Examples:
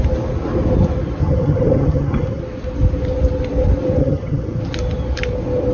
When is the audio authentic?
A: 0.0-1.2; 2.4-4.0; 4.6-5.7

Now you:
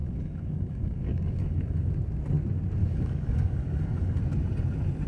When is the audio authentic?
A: 1.9-2.8; 4.2-5.1

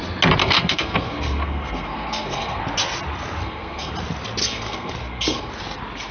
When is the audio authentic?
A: 0.0-0.4; 2.6-3.4; 3.9-4.4; 5.5-6.1

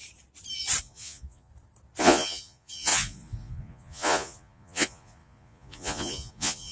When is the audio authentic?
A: 0.0-0.8; 1.5-2.0

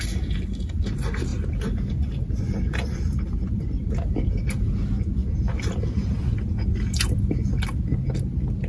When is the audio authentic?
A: 0.0-8.7